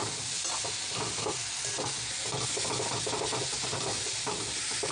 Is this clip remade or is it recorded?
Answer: recorded